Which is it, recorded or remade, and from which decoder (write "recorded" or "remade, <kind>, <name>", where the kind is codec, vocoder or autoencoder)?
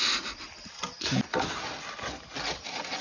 recorded